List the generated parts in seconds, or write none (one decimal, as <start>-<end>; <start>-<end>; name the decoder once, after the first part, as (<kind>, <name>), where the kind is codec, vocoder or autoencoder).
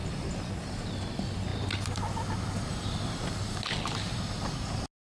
none